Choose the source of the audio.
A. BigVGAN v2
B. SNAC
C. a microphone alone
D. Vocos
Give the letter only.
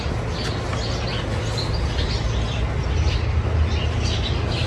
C